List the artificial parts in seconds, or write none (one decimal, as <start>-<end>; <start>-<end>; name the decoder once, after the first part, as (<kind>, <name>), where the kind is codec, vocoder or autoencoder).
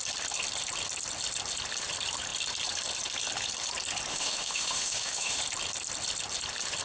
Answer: 4.1-5.4 (autoencoder, DAC-VAE)